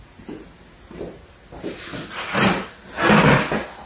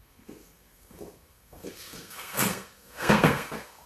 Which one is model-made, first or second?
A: second